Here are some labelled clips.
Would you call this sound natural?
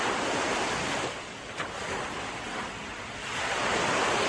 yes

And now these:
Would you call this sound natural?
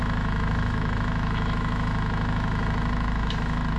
no